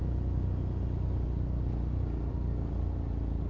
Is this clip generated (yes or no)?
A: no